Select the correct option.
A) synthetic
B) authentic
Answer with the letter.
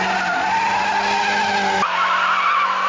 B